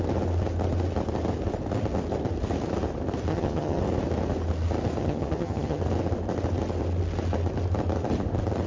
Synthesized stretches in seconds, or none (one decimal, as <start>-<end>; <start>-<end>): 3.3-3.8; 5.0-5.8